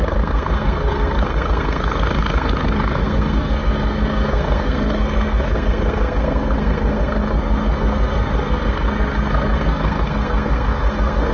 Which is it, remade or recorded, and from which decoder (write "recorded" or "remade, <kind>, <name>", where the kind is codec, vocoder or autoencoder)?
remade, codec, SNAC